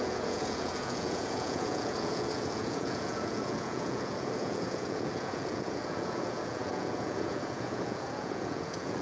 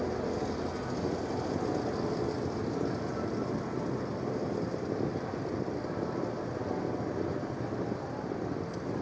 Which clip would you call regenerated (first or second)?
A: first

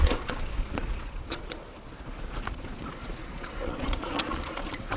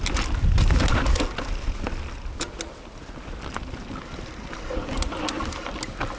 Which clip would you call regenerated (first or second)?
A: first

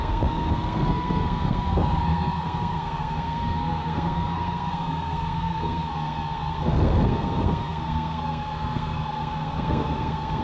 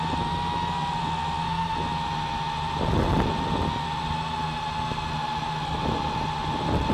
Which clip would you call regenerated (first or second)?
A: first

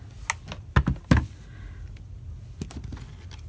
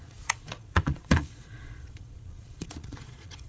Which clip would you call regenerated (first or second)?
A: second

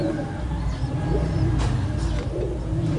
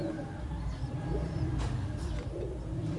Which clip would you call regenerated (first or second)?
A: second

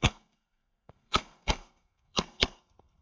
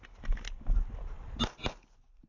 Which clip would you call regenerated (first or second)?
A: first